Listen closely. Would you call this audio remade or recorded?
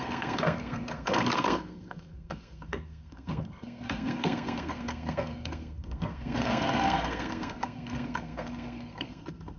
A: remade